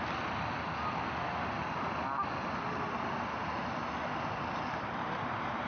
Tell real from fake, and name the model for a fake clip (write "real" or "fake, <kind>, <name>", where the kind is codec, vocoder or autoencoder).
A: real